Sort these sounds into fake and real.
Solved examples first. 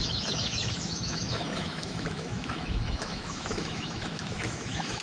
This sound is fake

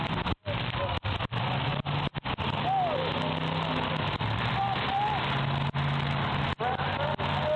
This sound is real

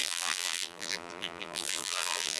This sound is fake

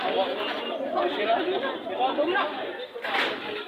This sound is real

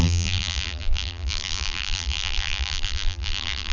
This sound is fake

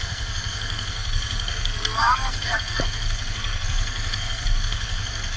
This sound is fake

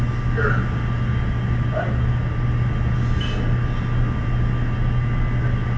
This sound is real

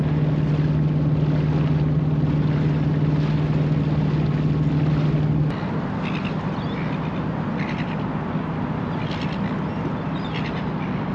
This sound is real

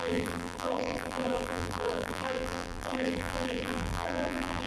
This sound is fake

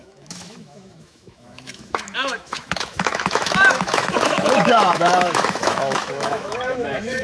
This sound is fake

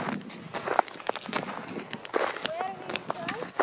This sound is real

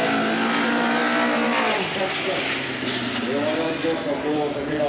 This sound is real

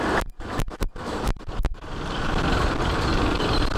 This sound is fake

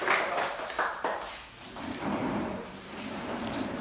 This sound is fake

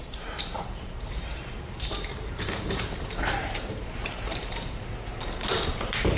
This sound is fake